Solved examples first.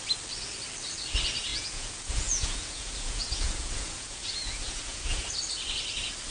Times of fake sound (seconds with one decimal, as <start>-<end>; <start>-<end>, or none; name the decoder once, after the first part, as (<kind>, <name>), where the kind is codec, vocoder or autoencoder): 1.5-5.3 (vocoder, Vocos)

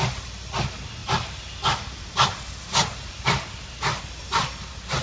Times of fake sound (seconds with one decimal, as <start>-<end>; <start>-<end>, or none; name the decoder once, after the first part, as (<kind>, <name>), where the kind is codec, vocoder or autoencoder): none

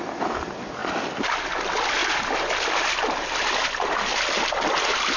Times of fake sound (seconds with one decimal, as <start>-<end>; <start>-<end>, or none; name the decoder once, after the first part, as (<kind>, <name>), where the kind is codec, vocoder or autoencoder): none